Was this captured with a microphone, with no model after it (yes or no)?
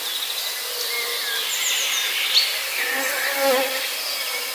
yes